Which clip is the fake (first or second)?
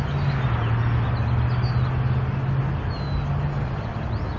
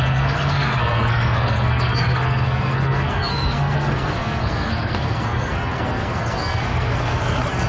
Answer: second